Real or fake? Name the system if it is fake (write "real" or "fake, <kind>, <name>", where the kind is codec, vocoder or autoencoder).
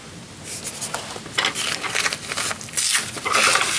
real